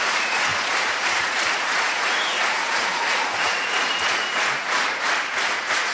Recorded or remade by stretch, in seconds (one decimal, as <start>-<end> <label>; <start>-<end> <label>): 0.0-5.9 remade